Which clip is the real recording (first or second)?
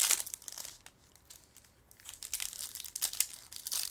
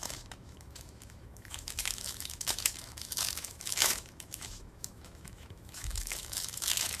first